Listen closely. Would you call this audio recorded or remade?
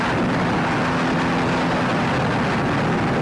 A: recorded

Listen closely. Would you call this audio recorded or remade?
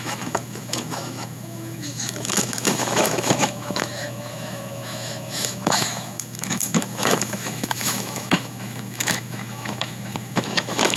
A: remade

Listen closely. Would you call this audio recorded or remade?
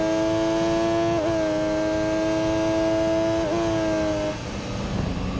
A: recorded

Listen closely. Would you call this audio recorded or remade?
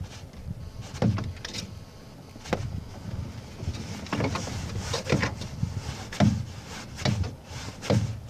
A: recorded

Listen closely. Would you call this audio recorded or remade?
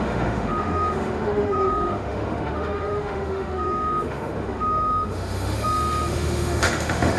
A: remade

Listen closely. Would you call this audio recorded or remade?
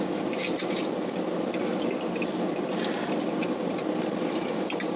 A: recorded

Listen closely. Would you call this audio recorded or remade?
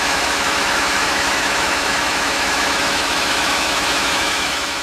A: remade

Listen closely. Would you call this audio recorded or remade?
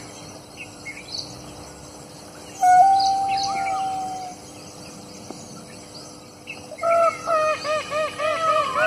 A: recorded